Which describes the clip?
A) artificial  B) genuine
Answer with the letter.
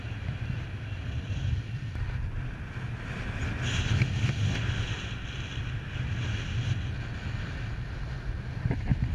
B